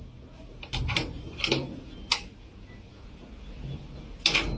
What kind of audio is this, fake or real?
real